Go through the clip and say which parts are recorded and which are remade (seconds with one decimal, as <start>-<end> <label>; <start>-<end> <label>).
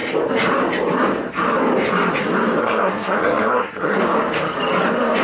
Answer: 0.0-2.6 recorded; 2.6-4.0 remade; 4.0-5.2 recorded